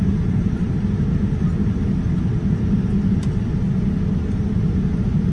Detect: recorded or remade recorded